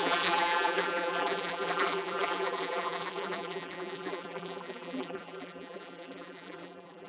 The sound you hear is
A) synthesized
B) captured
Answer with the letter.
A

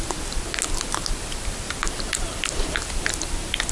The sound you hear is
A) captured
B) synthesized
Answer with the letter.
A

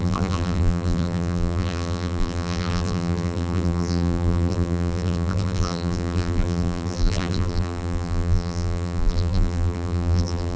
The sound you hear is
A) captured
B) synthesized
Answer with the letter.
B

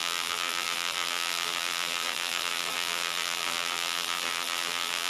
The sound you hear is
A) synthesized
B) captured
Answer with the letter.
A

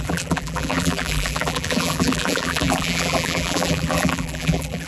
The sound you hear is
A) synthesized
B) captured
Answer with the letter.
A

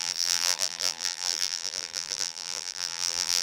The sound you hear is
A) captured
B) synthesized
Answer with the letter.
B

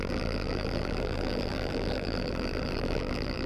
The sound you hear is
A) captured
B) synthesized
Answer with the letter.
B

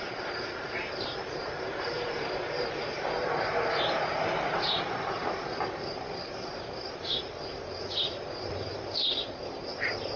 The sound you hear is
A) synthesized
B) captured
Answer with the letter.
A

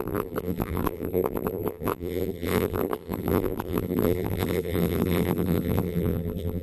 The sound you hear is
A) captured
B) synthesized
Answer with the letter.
B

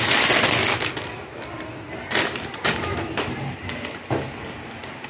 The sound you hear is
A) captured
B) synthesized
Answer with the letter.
A